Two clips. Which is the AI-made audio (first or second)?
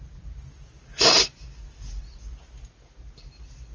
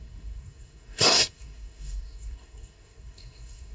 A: second